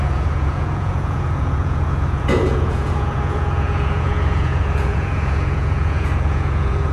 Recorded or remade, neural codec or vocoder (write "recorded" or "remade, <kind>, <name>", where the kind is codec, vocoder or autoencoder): remade, vocoder, Vocos